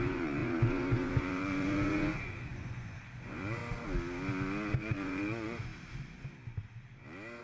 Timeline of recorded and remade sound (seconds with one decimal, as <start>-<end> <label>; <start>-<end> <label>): 0.0-3.6 remade; 3.6-4.7 recorded; 4.7-5.7 remade; 5.7-7.4 recorded